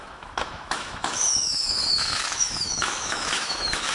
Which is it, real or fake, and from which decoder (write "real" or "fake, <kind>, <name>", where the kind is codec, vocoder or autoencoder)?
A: fake, autoencoder, DAC-VAE